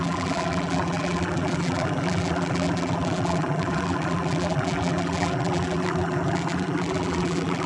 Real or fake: fake